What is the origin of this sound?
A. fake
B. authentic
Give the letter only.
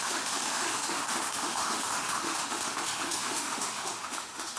A